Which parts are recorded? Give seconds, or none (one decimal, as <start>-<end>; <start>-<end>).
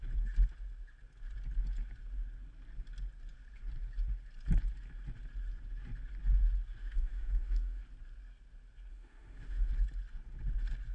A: 0.0-6.8; 7.8-8.9; 9.7-10.9